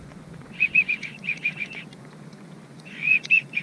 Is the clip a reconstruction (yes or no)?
yes